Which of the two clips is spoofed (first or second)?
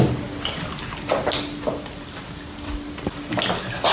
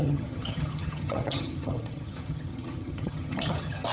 second